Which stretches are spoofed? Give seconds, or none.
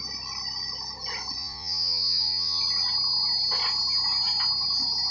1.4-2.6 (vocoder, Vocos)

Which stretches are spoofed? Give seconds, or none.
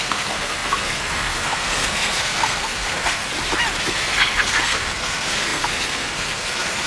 0.0-3.2 (codec, SNAC); 3.8-6.9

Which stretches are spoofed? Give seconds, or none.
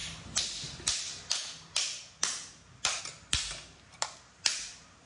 none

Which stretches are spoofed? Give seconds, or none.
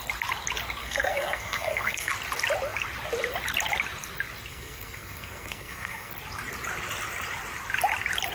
0.8-2.1 (codec, SNAC); 4.5-6.1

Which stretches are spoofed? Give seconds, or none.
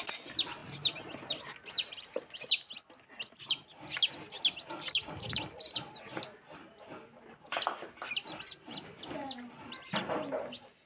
none